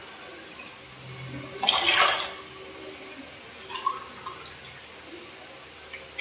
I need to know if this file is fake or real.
real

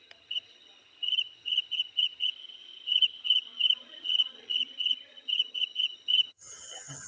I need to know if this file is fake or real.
fake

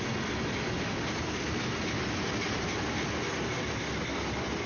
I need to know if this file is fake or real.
real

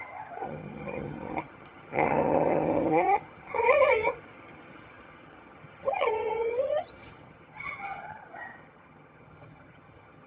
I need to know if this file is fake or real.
fake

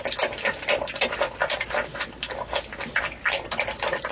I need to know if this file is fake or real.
real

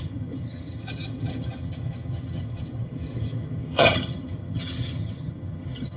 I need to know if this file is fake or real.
fake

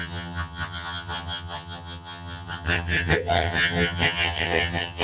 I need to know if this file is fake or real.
fake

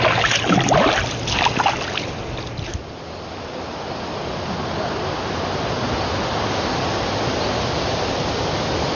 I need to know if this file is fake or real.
real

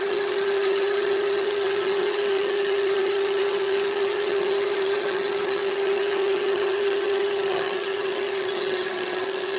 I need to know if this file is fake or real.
fake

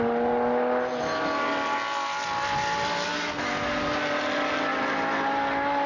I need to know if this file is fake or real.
real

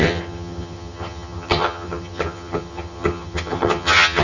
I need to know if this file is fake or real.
fake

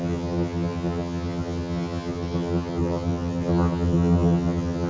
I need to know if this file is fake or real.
fake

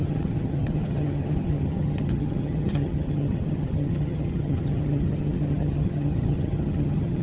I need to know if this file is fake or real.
fake